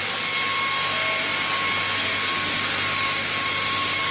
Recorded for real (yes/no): yes